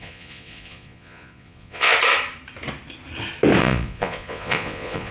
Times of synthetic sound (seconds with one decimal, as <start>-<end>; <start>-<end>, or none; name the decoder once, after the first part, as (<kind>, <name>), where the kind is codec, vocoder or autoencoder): 0.0-1.9 (vocoder, Vocos); 3.6-5.1